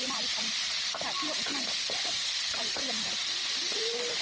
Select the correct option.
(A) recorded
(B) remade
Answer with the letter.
A